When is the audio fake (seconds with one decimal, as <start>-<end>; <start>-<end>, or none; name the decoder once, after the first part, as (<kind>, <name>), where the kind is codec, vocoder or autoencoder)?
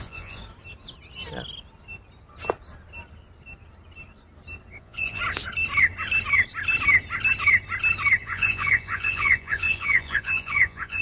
0.0-0.4 (vocoder, Vocos); 4.8-5.2; 8.2-11.0